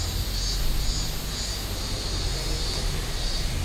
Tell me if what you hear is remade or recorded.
recorded